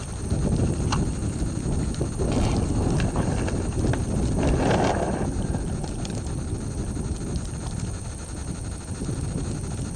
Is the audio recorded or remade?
recorded